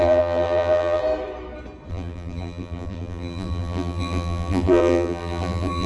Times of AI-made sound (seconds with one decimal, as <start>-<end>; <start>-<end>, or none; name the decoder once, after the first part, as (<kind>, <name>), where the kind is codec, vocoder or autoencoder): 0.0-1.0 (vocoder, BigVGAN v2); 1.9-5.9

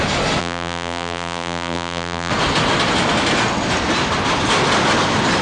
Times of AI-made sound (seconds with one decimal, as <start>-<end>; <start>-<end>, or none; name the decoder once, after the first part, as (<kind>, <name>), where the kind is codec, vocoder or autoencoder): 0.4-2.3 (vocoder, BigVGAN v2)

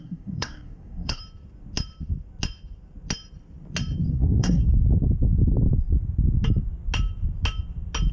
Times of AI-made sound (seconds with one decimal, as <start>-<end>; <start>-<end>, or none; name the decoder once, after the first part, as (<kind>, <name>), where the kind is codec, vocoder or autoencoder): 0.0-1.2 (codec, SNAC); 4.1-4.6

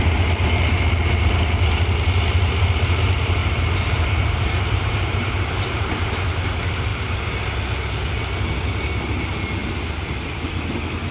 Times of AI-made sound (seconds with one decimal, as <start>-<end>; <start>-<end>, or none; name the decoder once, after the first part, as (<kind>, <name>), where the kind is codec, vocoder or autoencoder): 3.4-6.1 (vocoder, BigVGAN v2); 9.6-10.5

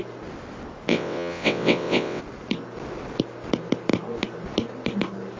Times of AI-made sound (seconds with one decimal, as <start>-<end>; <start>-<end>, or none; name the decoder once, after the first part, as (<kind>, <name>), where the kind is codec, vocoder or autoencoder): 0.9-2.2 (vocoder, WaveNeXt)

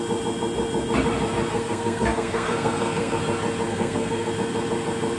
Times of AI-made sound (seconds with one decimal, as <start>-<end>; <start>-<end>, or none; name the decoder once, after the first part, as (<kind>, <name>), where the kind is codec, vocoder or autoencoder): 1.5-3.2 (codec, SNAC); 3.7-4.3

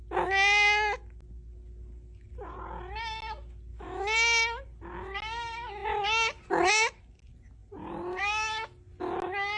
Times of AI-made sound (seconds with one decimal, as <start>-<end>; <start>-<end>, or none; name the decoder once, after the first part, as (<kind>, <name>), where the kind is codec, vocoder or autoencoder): 3.7-4.6 (autoencoder, DAC-VAE)